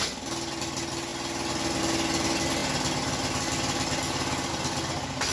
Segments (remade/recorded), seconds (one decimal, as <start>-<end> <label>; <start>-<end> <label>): 0.0-5.3 recorded